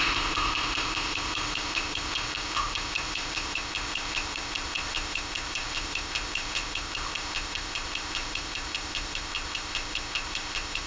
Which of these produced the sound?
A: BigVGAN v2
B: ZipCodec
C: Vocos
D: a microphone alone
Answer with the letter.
B